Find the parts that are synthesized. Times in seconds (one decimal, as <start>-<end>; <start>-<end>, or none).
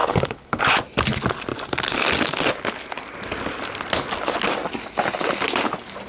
0.0-0.6